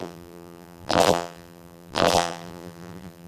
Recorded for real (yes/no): no